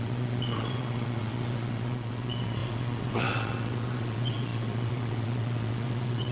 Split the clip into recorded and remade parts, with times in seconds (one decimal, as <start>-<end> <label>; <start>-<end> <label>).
0.0-6.3 remade